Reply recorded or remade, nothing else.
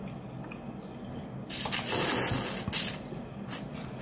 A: recorded